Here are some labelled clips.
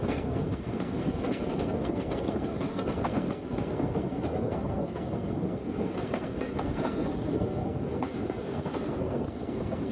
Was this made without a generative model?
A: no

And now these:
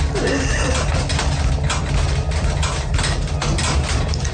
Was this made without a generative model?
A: yes